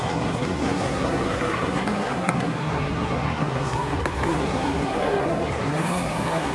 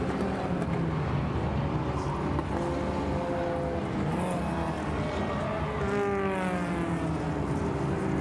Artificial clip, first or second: first